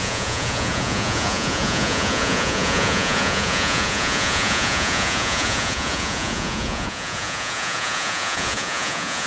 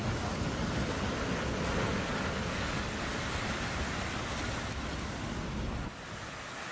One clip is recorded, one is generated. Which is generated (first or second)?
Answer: first